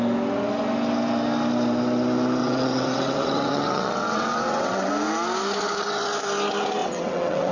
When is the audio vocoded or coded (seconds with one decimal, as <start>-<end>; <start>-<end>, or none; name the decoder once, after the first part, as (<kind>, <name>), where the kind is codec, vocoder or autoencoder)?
2.4-4.9 (vocoder, WaveNeXt); 6.8-7.5